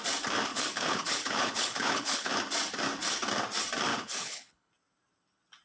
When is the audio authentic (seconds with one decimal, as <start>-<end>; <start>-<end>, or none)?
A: 0.0-0.5; 2.3-3.9; 4.7-5.6